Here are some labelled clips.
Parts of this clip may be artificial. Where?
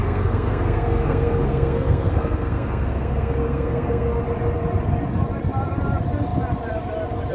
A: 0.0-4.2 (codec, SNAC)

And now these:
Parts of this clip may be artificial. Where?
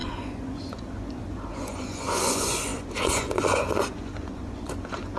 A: 0.0-5.2 (vocoder, Vocos)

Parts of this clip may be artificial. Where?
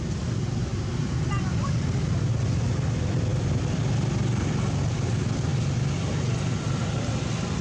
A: none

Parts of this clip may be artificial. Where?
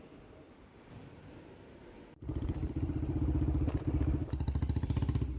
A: 0.0-5.4 (vocoder, BigVGAN v2)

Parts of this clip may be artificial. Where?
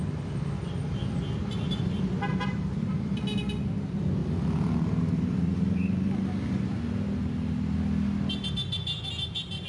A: none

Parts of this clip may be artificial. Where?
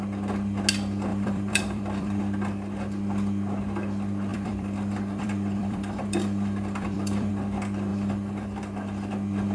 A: 1.1-2.2 (vocoder, BigVGAN v2); 4.3-7.3; 7.9-9.1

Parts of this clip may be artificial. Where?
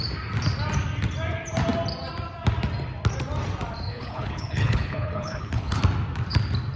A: 3.9-5.8 (codec, HILCodec)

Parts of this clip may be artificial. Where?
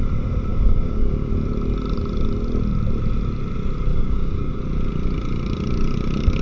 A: 0.5-1.3 (codec, DAC); 3.9-4.6